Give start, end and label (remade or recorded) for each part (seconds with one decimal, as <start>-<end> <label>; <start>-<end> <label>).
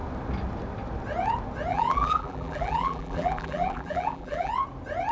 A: 0.0-1.7 recorded; 1.7-4.5 remade; 4.5-5.1 recorded